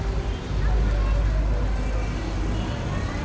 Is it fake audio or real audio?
real